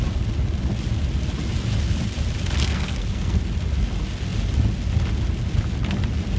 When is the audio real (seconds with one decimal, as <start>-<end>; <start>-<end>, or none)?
0.0-2.6; 3.4-6.4

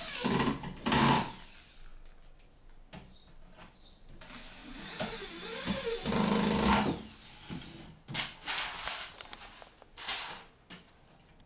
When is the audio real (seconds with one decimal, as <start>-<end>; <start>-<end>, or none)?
0.0-4.6; 5.3-11.5

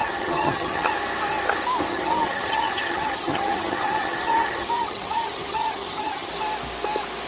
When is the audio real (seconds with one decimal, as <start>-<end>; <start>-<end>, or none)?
0.9-1.9; 6.3-7.3

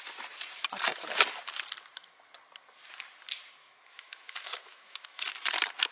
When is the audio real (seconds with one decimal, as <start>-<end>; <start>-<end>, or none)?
0.0-3.6; 5.3-5.9

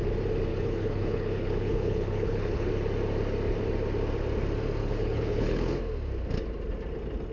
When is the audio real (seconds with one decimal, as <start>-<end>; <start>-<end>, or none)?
0.0-0.5; 2.7-4.8; 5.8-7.3